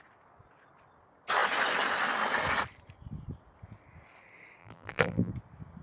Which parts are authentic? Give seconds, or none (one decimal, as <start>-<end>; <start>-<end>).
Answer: 0.0-4.6; 5.3-5.8